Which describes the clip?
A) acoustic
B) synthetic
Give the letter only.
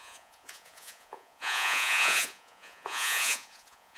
B